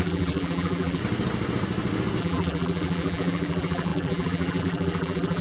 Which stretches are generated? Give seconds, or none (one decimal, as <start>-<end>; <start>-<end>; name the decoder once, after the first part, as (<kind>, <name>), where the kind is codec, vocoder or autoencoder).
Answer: 0.0-1.0 (vocoder, BigVGAN v2); 2.2-5.4